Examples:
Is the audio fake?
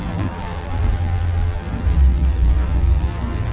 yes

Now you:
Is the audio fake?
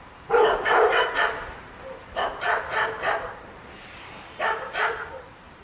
yes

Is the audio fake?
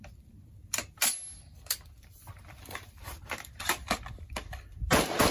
yes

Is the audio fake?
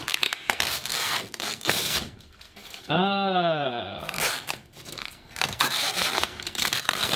yes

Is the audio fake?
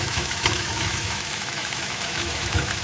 yes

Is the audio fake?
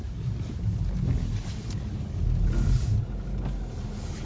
no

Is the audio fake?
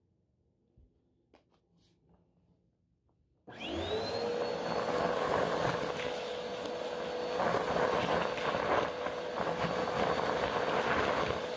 no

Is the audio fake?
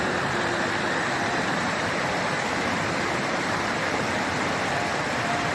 yes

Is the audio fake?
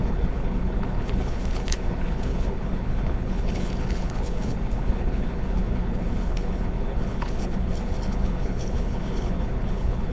yes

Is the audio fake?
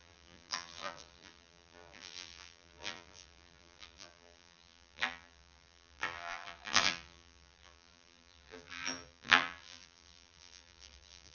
yes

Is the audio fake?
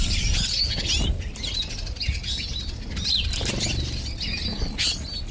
no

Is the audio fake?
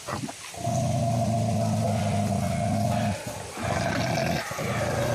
no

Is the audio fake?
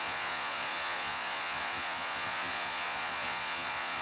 yes